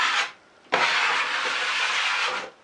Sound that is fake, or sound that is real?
real